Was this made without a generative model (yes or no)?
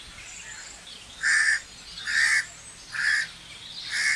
yes